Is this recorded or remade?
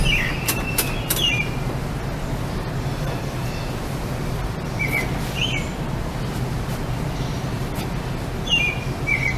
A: recorded